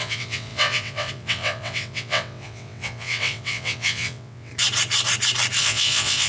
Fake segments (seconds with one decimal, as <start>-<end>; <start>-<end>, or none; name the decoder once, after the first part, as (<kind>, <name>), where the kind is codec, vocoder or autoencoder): 0.0-4.5 (vocoder, WaveNeXt); 5.6-6.3